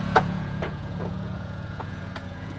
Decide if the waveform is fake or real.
fake